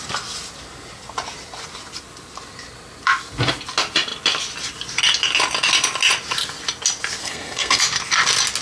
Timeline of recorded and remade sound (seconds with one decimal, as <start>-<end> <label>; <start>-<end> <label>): 0.0-7.2 recorded; 7.2-7.8 remade; 7.8-8.6 recorded